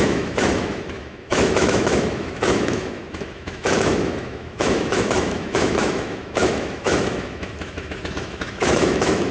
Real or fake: fake